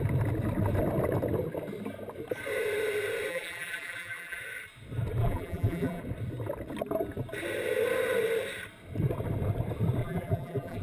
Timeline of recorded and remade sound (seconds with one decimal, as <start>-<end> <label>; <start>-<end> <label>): 0.0-3.3 recorded; 3.3-4.4 remade; 4.4-5.2 recorded; 5.2-6.0 remade; 6.0-10.0 recorded; 10.0-10.8 remade